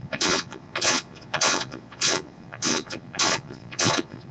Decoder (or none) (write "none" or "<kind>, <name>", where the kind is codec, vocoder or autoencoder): vocoder, Vocos